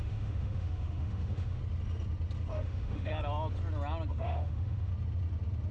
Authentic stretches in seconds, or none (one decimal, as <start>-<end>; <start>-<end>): 1.6-2.5; 3.1-4.1; 4.9-5.7